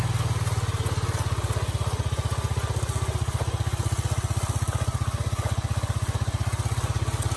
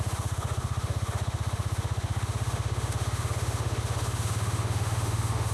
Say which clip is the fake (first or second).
second